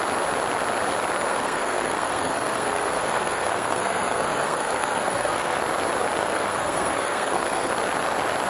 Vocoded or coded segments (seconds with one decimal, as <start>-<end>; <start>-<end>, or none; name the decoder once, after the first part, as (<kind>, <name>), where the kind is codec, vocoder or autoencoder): 1.3-5.6 (codec, SNAC); 6.2-7.7

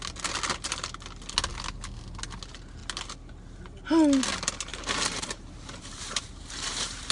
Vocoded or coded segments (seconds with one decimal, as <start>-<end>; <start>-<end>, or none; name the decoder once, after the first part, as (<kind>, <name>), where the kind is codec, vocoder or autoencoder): 4.7-7.1 (vocoder, BigVGAN v2)

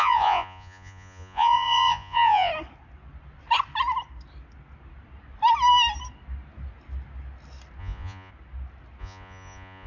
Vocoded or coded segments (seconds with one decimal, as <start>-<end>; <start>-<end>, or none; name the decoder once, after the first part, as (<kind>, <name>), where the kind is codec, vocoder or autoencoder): 0.0-2.5 (vocoder, Vocos); 7.8-8.3; 9.0-9.9

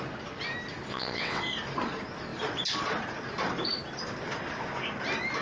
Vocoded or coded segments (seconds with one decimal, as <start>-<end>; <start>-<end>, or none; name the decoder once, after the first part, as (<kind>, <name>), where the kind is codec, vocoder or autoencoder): 0.9-1.4 (vocoder, WaveNeXt)

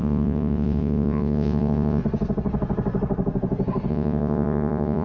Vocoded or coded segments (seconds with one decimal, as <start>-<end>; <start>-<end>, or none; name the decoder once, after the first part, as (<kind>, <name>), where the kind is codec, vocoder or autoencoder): 0.0-2.0 (vocoder, Vocos); 3.9-5.0

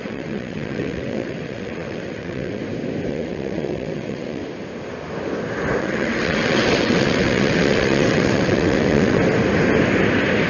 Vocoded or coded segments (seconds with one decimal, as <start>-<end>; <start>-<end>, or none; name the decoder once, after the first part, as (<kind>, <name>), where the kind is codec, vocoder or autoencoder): 0.0-2.6 (vocoder, WaveNeXt); 3.1-4.4; 5.8-9.2